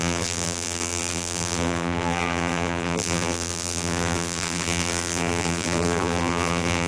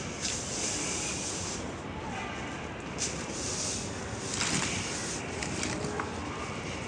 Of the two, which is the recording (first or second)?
second